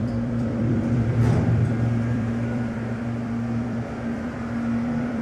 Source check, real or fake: fake